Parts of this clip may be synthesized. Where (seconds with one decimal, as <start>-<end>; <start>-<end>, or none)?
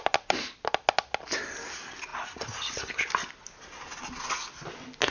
none